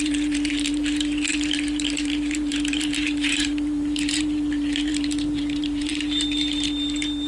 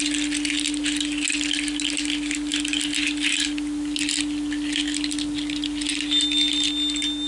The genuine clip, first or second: second